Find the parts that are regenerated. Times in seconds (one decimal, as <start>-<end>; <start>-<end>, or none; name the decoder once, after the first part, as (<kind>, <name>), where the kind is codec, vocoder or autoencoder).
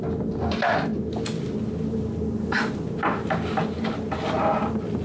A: none